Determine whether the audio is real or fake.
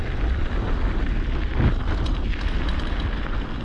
real